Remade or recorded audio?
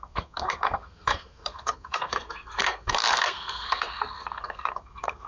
remade